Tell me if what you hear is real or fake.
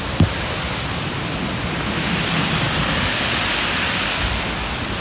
real